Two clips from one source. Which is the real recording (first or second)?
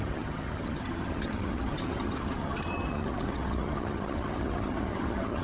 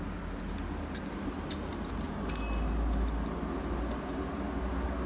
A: second